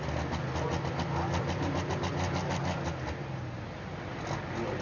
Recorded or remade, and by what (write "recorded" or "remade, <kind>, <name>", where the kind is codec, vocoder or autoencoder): recorded